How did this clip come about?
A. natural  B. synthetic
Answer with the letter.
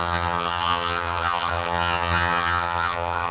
B